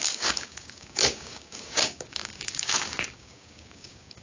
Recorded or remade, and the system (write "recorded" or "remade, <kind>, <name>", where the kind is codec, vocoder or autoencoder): remade, codec, DAC